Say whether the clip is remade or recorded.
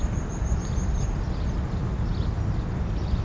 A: recorded